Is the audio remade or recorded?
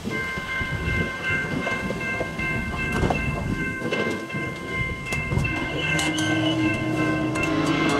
remade